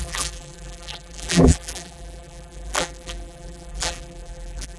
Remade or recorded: remade